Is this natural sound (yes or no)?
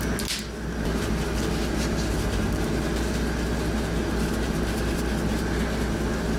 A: yes